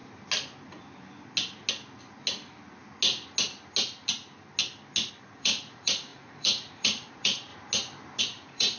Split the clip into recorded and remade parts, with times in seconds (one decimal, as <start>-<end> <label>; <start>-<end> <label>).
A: 0.0-5.2 recorded; 5.2-7.5 remade; 7.5-8.2 recorded; 8.2-8.8 remade